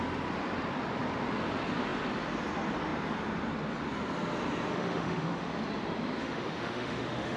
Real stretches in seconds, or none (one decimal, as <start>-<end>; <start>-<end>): 0.0-4.7; 5.5-6.2